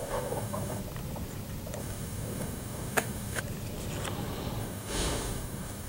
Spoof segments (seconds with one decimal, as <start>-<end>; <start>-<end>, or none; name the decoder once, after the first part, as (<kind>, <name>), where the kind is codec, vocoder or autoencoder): 0.0-0.8 (codec, DAC); 1.8-3.4; 4.6-5.9